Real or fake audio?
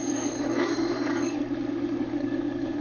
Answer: fake